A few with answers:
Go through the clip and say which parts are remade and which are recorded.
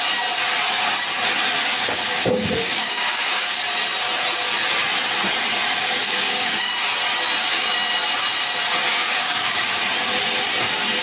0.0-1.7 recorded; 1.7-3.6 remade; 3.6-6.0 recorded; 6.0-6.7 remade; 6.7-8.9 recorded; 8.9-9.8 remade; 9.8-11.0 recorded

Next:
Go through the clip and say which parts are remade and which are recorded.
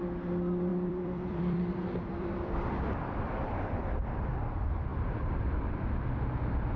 0.0-0.7 recorded; 0.7-4.0 remade; 4.0-4.9 recorded; 4.9-5.4 remade; 5.4-6.8 recorded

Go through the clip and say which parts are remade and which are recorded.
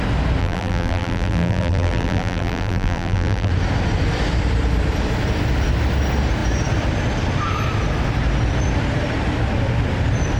0.0-0.4 recorded; 0.4-3.5 remade; 3.5-10.4 recorded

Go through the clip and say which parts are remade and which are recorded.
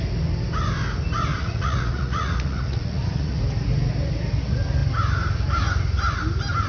0.0-1.3 recorded; 1.3-3.4 remade; 3.4-6.7 recorded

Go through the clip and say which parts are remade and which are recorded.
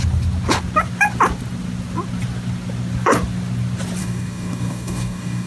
0.0-4.0 recorded; 4.0-5.5 remade